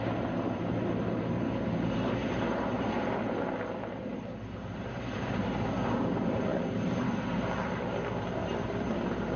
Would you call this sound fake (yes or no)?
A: no